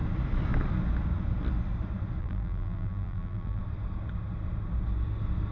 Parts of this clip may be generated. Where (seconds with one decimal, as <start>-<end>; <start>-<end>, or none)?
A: 2.2-3.6